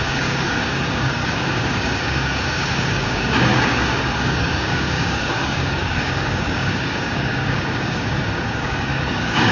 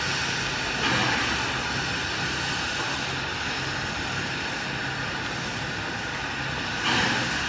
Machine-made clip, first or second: first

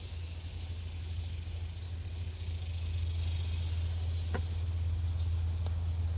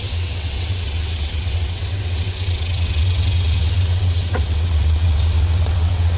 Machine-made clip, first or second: second